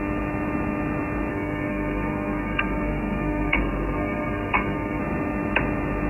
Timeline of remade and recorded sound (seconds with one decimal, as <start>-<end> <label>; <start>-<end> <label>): 0.0-1.3 recorded; 1.3-5.0 remade; 5.0-6.1 recorded